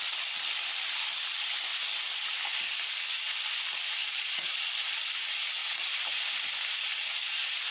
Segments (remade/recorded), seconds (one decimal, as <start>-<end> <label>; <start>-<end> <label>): 0.0-4.0 recorded; 4.0-4.7 remade; 4.7-7.7 recorded